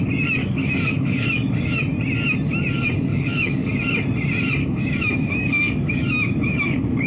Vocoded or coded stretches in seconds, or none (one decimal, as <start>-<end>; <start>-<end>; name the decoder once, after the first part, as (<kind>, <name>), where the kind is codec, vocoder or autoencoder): 0.4-1.8 (codec, DAC); 3.1-3.7; 4.6-7.1